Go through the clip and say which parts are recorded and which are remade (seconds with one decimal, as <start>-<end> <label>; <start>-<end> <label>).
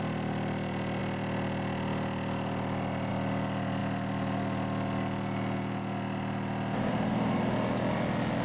0.0-8.4 recorded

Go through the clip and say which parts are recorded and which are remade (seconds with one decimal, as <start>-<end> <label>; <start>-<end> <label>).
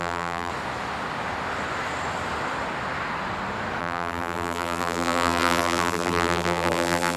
0.0-0.5 remade; 0.5-3.8 recorded; 3.8-7.2 remade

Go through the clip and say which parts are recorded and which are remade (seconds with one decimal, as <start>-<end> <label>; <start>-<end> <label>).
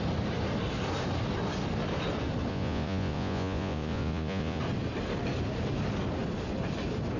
0.0-2.5 recorded; 2.5-4.6 remade; 4.6-7.2 recorded